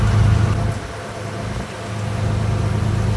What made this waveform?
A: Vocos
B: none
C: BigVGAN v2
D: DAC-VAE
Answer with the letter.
B